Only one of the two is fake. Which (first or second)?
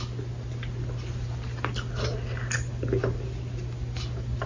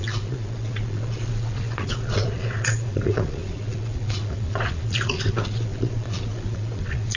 second